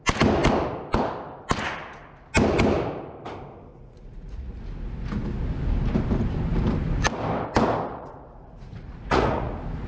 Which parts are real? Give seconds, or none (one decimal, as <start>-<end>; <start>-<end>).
0.0-3.7; 4.6-7.9; 9.5-9.9